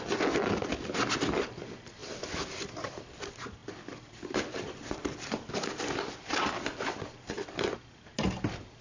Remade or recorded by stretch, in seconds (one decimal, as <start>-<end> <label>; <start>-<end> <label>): 0.0-2.0 recorded; 2.0-3.0 remade; 3.0-3.6 recorded; 3.6-5.5 remade; 5.5-8.8 recorded